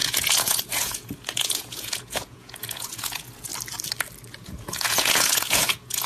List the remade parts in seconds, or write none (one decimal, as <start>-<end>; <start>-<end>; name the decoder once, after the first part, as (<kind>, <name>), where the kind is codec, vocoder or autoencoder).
0.0-3.5 (vocoder, Vocos); 4.3-6.1

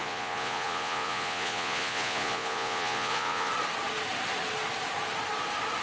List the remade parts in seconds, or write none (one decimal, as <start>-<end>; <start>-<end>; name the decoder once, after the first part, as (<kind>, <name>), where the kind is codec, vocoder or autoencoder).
0.0-3.5 (vocoder, Vocos)

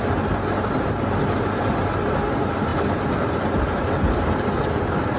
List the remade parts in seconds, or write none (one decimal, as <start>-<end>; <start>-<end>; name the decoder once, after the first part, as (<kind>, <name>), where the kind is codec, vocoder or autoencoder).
none

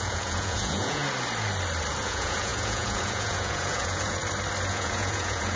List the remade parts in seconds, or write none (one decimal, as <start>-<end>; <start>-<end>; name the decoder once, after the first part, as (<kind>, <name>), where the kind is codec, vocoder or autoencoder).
0.0-1.0 (vocoder, Vocos); 2.0-4.2; 4.7-5.6

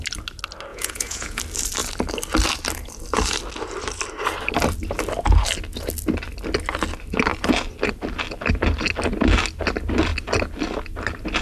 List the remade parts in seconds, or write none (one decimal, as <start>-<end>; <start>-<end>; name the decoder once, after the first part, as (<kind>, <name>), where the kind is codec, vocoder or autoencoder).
0.7-1.4 (vocoder, Vocos)

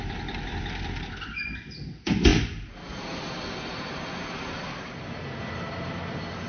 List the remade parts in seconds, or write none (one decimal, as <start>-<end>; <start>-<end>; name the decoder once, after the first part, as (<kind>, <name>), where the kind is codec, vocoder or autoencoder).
none